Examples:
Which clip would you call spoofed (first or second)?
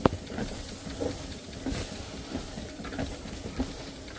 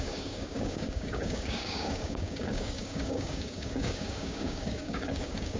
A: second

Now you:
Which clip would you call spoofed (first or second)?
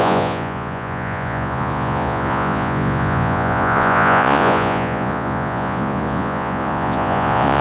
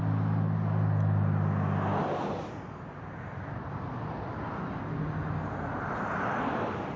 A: first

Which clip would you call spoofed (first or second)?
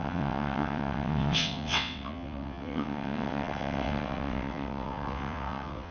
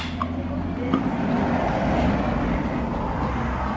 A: first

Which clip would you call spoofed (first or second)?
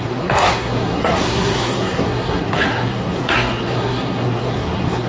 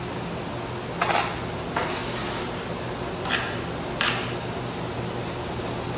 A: first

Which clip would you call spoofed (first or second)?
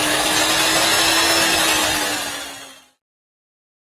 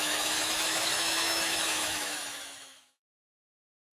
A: second